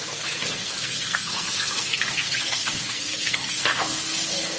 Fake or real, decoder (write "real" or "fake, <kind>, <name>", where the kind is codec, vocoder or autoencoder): fake, codec, SNAC